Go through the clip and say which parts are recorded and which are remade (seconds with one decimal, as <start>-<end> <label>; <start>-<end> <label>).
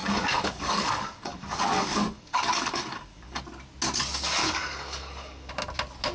0.0-3.4 remade; 3.4-4.4 recorded; 4.4-5.5 remade; 5.5-6.1 recorded